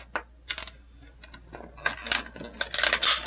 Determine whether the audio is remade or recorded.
recorded